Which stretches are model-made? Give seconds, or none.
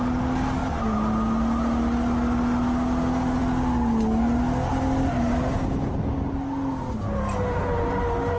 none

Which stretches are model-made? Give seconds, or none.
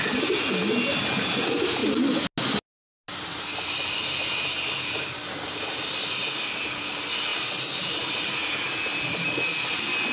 none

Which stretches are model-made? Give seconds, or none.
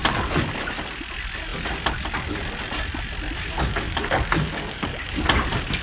3.7-5.1 (codec, DAC)